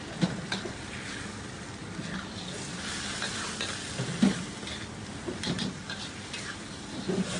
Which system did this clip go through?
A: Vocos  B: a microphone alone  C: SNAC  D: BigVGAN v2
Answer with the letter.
B